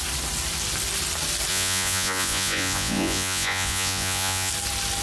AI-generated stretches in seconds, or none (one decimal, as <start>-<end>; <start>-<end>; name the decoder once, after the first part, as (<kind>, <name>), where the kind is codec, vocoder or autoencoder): 1.5-4.5 (vocoder, Vocos)